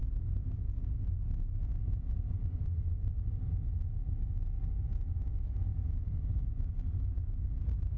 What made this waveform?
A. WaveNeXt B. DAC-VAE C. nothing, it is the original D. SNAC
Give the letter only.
C